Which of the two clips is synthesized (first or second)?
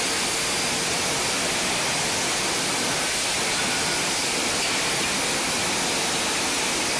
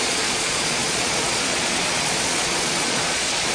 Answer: second